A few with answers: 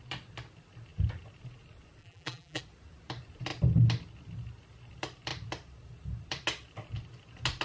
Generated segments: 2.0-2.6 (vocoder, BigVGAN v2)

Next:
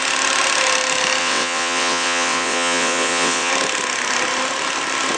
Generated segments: 1.2-3.5 (vocoder, WaveNeXt)

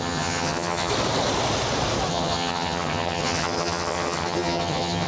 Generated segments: 0.0-0.9 (vocoder, HiFi-GAN); 2.1-5.1

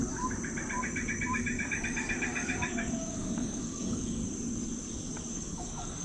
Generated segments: 0.8-4.2 (codec, DAC); 5.3-6.0

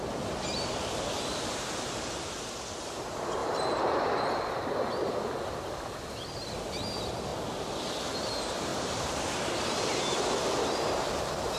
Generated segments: 0.5-1.1 (vocoder, BigVGAN v2); 3.4-4.1; 8.7-10.0